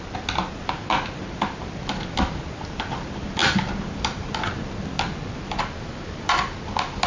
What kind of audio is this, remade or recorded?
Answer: recorded